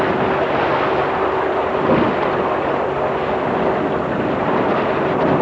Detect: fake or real real